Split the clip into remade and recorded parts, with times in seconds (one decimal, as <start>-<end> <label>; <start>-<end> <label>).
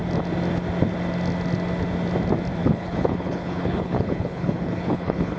0.0-2.6 recorded; 2.6-5.4 remade